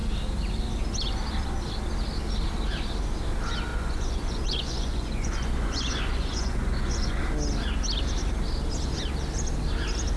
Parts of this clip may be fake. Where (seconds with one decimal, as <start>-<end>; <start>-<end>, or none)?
3.7-7.2